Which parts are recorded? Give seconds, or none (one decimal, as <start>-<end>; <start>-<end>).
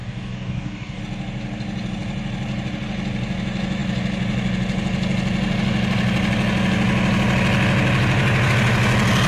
1.0-9.3